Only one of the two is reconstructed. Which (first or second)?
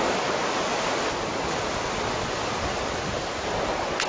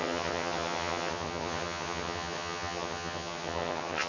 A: second